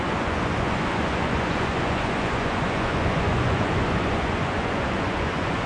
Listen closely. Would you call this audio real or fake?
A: fake